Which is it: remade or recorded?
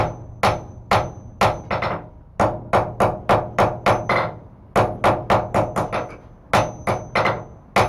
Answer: recorded